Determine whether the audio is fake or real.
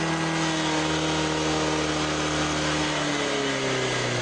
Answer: real